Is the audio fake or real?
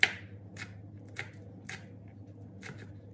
real